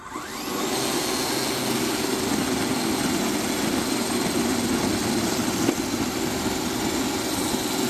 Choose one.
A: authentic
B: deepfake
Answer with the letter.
A